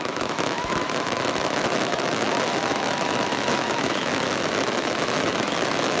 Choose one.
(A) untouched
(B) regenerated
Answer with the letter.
B